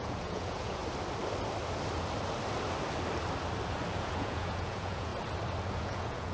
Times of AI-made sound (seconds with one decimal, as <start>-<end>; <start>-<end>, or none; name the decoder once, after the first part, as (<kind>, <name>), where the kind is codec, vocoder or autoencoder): 0.0-0.8 (vocoder, Vocos); 4.0-5.1; 5.8-6.3